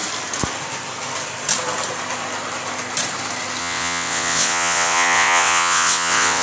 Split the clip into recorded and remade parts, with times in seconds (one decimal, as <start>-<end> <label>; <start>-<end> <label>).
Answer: 0.0-3.6 recorded; 3.6-6.4 remade